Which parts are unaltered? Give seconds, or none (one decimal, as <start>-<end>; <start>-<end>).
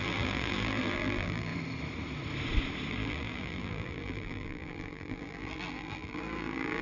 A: 1.5-2.9